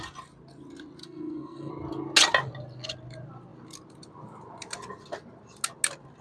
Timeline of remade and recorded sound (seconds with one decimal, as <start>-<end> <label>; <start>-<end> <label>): 0.0-1.0 recorded; 1.0-1.7 remade; 1.7-6.2 recorded